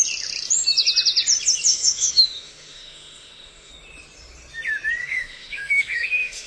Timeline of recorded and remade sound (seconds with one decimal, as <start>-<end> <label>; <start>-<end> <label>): 0.0-1.7 recorded; 1.7-3.7 remade; 3.7-5.0 recorded; 5.0-6.5 remade

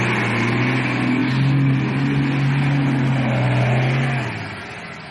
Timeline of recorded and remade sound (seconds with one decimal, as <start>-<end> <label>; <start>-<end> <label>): 0.0-5.1 recorded

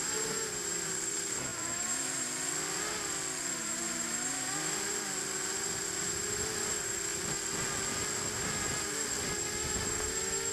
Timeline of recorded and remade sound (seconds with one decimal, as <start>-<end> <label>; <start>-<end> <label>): 0.0-10.5 recorded

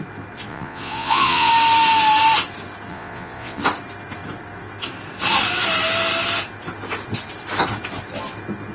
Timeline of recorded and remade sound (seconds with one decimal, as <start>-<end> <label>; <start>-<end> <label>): 0.0-0.5 recorded; 0.5-1.5 remade; 1.5-2.9 recorded; 2.9-3.6 remade; 3.6-8.7 recorded

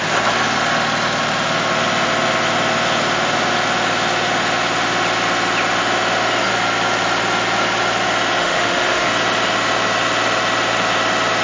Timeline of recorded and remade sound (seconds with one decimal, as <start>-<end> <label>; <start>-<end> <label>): 0.0-8.4 recorded; 8.4-9.1 remade; 9.1-11.4 recorded

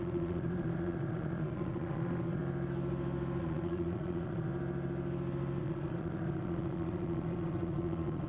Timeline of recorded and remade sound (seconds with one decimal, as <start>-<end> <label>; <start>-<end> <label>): 0.0-2.4 remade; 2.4-3.4 recorded; 3.4-4.5 remade; 4.5-5.6 recorded; 5.6-8.3 remade

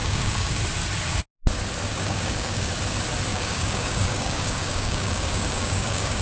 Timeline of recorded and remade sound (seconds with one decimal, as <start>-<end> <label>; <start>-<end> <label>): 0.0-0.6 remade; 0.6-1.9 recorded; 1.9-2.7 remade; 2.7-3.3 recorded; 3.3-6.2 remade